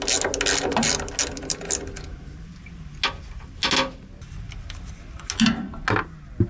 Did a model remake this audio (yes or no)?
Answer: no